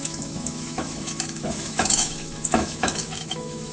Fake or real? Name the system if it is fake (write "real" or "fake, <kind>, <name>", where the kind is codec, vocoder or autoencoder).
fake, autoencoder, DAC-VAE